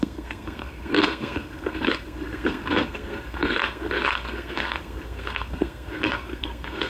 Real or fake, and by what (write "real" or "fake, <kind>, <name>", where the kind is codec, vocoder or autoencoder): fake, codec, SNAC